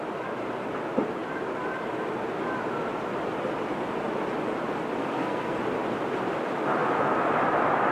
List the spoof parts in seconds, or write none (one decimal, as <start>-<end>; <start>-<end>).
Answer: 5.0-5.6